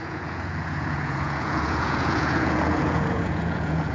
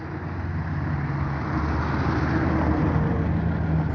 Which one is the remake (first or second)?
first